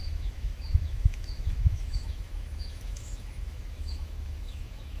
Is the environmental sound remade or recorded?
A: remade